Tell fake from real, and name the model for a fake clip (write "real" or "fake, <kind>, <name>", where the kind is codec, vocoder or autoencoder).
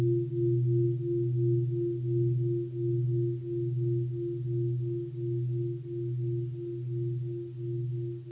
real